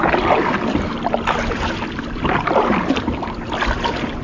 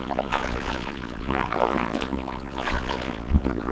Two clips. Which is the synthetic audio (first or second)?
second